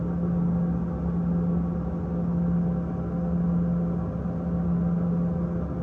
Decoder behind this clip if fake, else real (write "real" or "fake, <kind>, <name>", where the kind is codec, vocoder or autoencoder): real